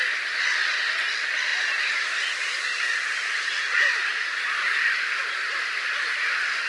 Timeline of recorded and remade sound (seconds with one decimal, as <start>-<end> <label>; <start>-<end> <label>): 0.0-6.7 recorded